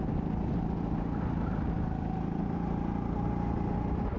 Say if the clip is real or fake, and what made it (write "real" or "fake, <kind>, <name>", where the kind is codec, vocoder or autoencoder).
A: real